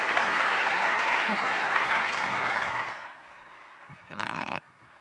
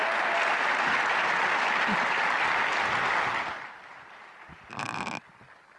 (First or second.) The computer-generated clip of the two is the first